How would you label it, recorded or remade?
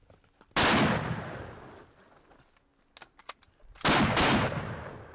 recorded